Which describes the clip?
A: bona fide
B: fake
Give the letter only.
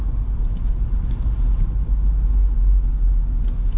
A